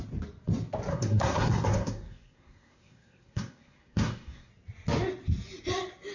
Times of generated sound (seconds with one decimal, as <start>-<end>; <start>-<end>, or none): 0.9-4.5